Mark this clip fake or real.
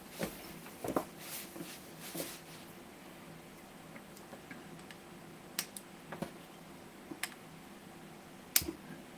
real